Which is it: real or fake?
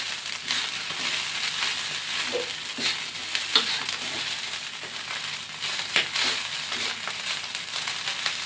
real